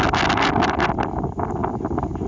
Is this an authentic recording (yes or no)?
yes